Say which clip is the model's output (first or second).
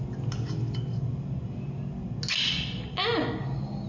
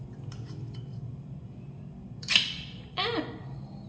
second